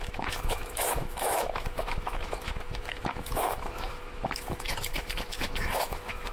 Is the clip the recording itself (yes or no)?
no